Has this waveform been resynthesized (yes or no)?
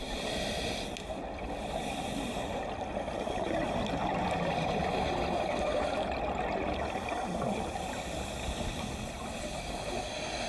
no